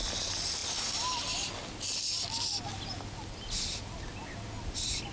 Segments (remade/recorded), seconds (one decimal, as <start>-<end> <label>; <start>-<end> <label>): 0.0-5.1 recorded